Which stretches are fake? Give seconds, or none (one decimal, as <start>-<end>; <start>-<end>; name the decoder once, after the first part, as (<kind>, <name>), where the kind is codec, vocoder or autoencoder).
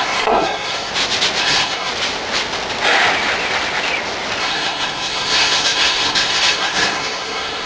0.0-0.9 (codec, SNAC); 1.4-1.9; 4.4-7.7